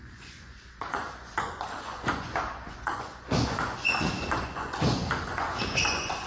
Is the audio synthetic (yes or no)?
yes